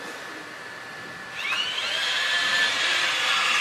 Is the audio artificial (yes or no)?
yes